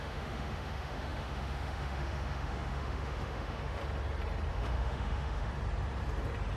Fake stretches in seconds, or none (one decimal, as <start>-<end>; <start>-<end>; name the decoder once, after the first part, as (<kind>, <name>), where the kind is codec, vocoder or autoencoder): 0.0-3.8 (autoencoder, DAC-VAE); 4.5-5.5